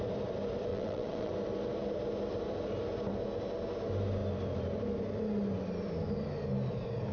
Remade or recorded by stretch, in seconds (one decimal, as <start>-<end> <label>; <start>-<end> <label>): 0.0-0.7 recorded; 0.7-1.3 remade; 1.3-7.1 recorded

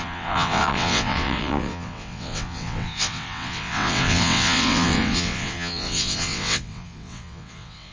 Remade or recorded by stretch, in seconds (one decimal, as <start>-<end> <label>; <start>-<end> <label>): 0.0-7.9 remade

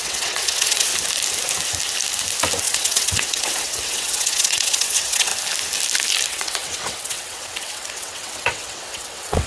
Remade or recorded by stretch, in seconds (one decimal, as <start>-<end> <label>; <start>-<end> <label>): 0.0-0.9 remade; 0.9-2.6 recorded; 2.6-5.3 remade; 5.3-6.3 recorded; 6.3-9.5 remade

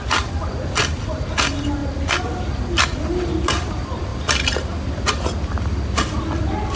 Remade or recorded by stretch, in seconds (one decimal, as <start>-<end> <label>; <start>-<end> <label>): 0.0-6.8 recorded

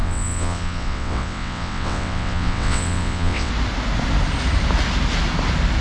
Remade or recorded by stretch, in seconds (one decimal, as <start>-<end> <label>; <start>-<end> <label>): 0.0-3.5 remade; 3.5-5.8 recorded

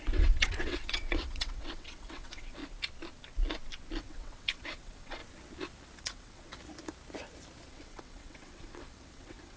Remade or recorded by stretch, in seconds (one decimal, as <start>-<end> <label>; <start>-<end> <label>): 0.0-2.6 remade; 2.6-4.0 recorded; 4.0-5.2 remade; 5.2-6.0 recorded; 6.0-6.6 remade; 6.6-7.7 recorded; 7.7-9.6 remade